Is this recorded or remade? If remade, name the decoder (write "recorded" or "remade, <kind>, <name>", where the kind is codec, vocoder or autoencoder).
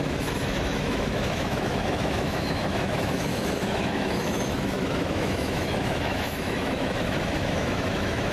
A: remade, autoencoder, DAC-VAE